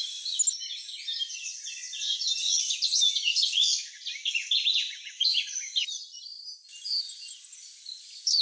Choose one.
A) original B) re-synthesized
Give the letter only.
A